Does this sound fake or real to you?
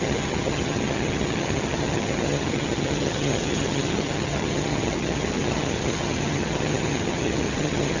fake